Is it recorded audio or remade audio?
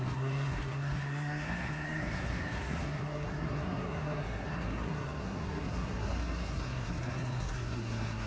remade